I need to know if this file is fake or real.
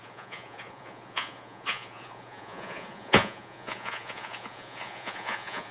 fake